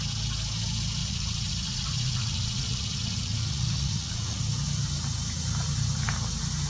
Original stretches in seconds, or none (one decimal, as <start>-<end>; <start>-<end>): 0.0-1.0; 4.4-6.7

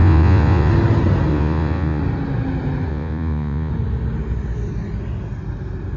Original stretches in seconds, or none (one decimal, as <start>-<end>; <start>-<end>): 0.7-1.3; 2.0-2.9; 3.7-6.0

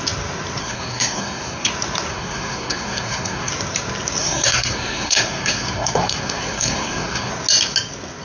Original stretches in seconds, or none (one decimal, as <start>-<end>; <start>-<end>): 0.0-0.6; 1.7-2.1; 3.5-4.2; 7.3-8.2

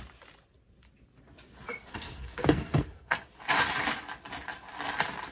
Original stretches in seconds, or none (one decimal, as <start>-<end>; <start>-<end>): 0.0-1.9; 3.2-5.3

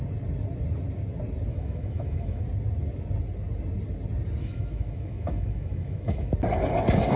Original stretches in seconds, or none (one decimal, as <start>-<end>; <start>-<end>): 0.0-1.5; 2.4-4.4; 6.3-7.2

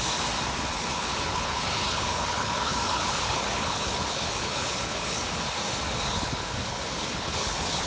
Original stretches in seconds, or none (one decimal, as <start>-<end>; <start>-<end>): 0.0-0.7; 5.3-6.1

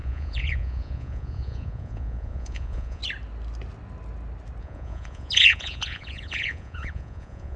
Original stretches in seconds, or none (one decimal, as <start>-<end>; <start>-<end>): 3.0-4.6

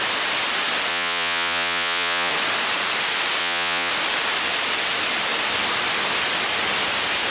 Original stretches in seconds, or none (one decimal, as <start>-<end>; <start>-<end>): 0.0-0.9; 2.3-3.4; 3.9-7.3